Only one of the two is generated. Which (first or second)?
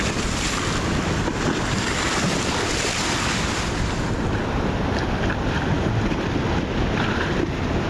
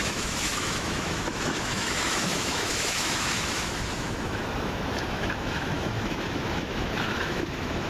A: second